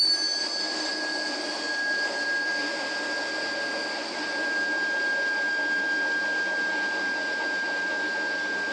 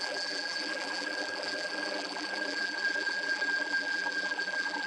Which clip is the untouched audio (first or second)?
first